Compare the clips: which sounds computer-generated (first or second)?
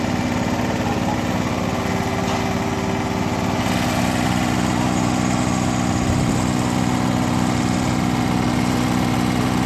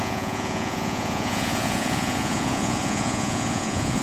second